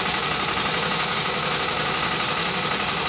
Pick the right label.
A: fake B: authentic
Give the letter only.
B